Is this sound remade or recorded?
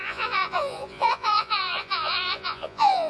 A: remade